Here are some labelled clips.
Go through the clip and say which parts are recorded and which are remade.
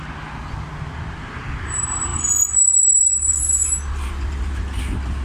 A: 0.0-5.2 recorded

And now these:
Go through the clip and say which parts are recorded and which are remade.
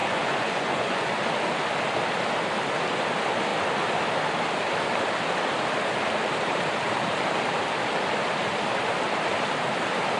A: 0.0-1.1 remade; 1.1-10.2 recorded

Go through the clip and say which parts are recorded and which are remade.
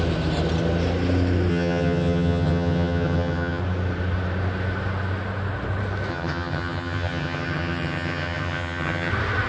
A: 0.0-1.5 recorded; 1.5-3.6 remade; 3.6-6.1 recorded; 6.1-9.1 remade; 9.1-9.5 recorded